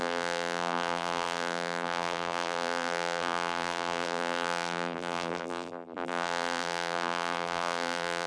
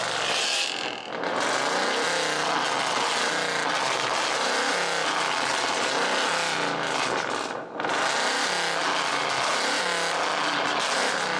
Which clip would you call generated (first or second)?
first